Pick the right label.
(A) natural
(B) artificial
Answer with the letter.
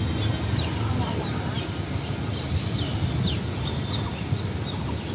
A